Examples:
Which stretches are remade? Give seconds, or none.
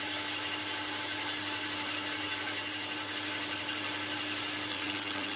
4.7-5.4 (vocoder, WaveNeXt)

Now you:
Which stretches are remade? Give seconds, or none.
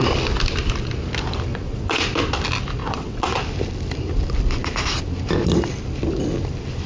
1.5-2.0 (vocoder, WaveNeXt); 2.8-3.4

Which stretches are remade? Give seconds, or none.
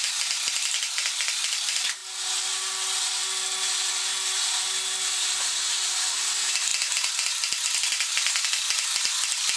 none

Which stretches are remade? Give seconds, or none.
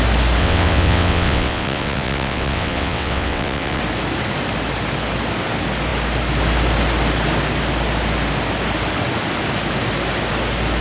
0.4-3.8 (vocoder, WaveNeXt)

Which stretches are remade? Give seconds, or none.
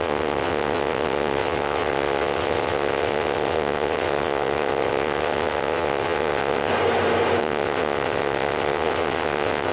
0.0-6.7 (vocoder, WaveNeXt); 7.4-9.7